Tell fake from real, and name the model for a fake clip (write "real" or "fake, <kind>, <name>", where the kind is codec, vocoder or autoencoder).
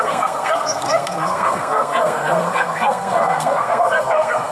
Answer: fake, codec, SNAC